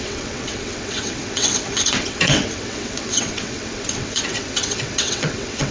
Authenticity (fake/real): fake